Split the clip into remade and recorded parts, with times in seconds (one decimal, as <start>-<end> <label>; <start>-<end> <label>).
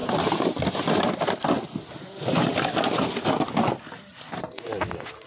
0.0-4.1 recorded; 4.1-5.3 remade